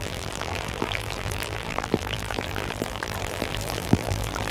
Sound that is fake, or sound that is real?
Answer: fake